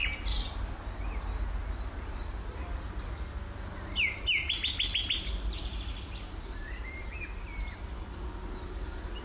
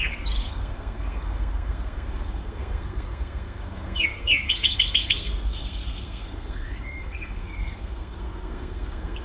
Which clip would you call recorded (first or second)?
first